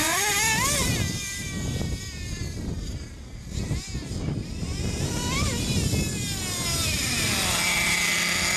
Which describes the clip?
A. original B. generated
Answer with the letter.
A